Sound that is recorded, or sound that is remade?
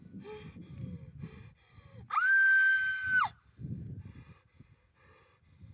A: recorded